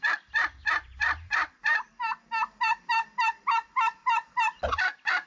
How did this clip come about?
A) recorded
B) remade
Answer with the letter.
A